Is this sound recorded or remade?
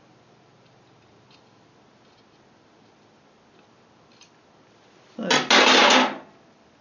recorded